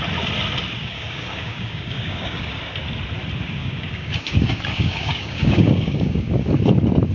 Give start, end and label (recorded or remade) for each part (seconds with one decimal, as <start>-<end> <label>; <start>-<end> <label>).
0.0-0.8 recorded; 0.8-2.6 remade; 2.6-3.6 recorded; 3.6-6.5 remade; 6.5-7.1 recorded